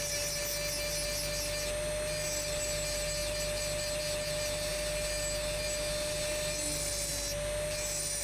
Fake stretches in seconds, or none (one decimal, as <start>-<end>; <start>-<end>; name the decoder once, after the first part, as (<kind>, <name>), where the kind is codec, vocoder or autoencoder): none